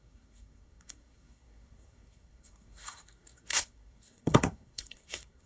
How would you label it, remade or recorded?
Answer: remade